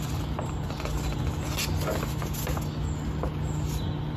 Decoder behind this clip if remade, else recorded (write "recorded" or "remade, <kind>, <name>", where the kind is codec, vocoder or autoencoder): recorded